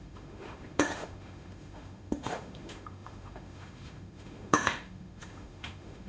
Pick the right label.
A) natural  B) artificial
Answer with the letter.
B